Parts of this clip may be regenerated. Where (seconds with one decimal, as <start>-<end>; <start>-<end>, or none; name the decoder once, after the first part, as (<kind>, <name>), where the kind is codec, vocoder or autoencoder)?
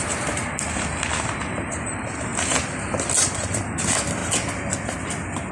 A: none